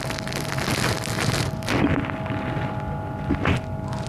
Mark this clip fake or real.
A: real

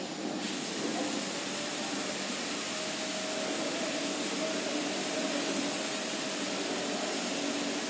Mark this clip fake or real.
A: real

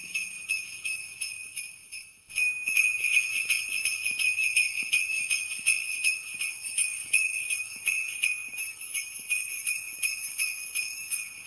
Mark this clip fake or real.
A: fake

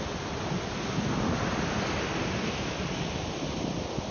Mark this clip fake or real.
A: real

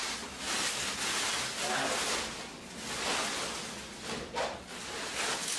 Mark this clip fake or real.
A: real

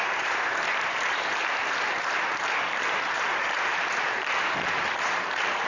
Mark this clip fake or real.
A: fake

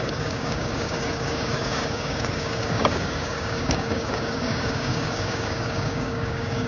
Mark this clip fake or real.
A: fake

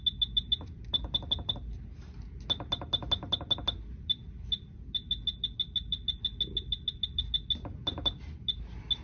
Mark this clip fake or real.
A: real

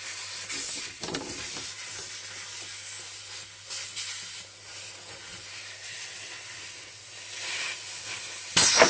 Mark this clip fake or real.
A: real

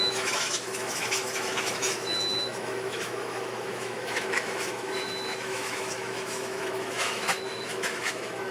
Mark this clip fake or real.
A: fake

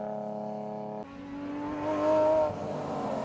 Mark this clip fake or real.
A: real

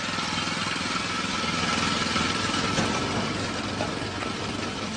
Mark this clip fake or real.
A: real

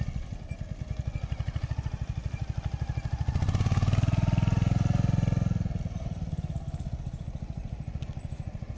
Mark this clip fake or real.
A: real